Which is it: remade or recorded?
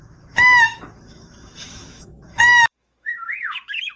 remade